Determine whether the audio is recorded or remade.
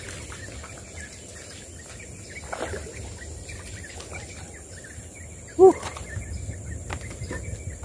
recorded